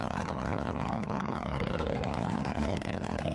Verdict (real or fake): fake